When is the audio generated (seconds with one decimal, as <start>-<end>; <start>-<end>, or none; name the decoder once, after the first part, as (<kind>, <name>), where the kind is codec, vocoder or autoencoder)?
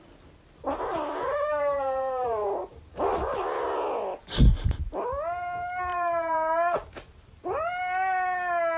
0.9-3.4 (vocoder, BigVGAN v2); 5.9-6.9